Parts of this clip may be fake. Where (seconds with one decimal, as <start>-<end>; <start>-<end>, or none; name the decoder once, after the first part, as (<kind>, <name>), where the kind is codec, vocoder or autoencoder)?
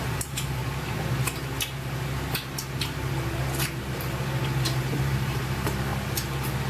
0.0-0.6 (vocoder, BigVGAN v2); 4.6-5.9